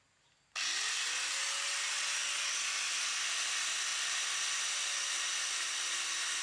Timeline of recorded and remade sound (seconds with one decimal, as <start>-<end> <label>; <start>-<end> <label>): 0.0-6.4 recorded